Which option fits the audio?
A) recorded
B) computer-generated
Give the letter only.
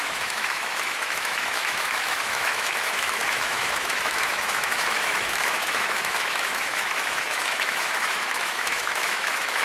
B